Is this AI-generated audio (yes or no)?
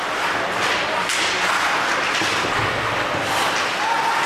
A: no